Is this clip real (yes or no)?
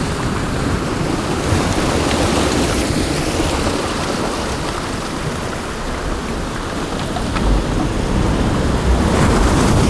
yes